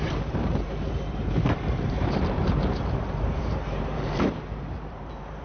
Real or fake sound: fake